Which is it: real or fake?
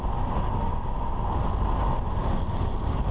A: real